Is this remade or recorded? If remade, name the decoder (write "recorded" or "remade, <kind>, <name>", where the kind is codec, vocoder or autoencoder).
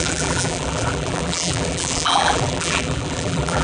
remade, vocoder, BigVGAN v2